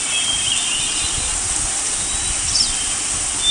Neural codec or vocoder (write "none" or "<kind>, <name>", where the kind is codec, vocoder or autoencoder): none